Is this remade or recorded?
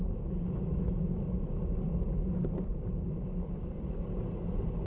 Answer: recorded